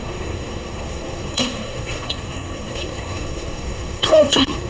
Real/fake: fake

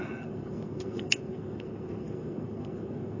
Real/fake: fake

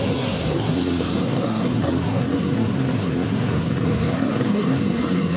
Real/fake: fake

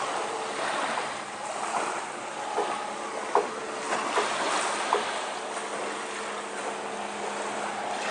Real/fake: real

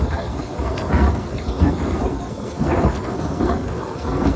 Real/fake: fake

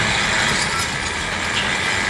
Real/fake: real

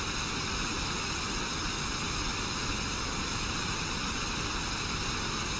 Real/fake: real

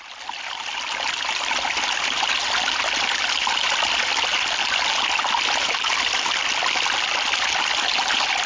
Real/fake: real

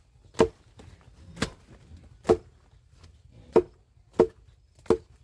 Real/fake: real